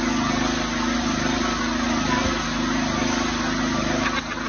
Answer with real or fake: real